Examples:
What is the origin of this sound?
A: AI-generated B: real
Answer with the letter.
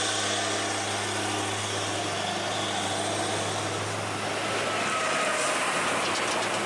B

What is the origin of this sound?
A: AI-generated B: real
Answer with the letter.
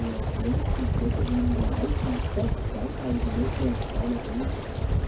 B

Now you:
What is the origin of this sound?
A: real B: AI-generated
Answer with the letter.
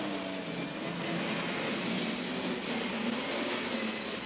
A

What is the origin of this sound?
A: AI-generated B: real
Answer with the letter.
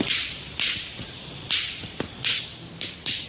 A